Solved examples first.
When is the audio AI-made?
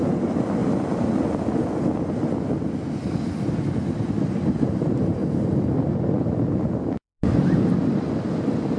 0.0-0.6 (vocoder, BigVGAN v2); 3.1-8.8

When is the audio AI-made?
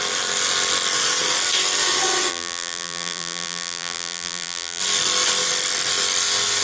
2.3-4.8 (vocoder, BigVGAN v2)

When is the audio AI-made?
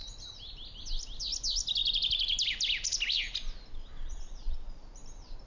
4.0-4.8 (vocoder, Vocos)